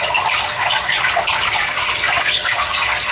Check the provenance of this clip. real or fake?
real